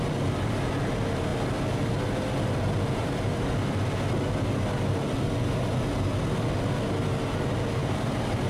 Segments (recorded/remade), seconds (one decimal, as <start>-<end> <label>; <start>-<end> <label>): 0.0-7.8 recorded; 7.8-8.5 remade